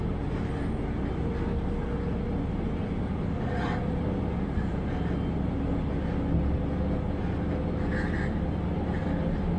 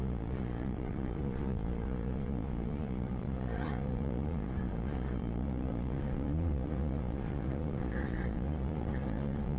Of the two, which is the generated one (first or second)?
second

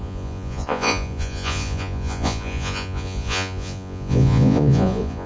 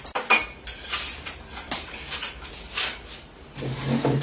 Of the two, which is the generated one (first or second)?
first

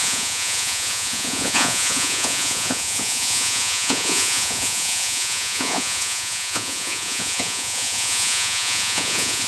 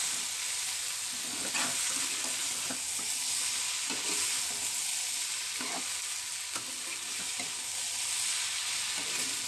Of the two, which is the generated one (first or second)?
first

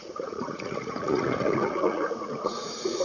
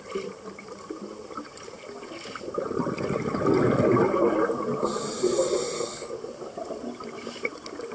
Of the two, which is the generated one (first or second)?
first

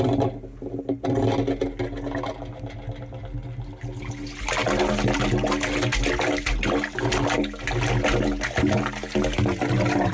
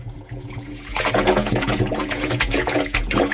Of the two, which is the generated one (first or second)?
second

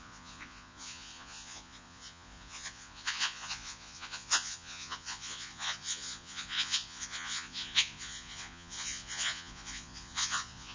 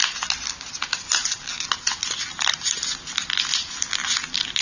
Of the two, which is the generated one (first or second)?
first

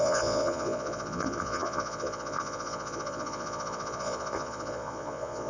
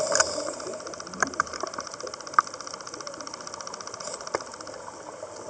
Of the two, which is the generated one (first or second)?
first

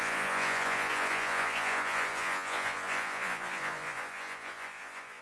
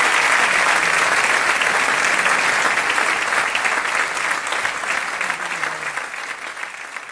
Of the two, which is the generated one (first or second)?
first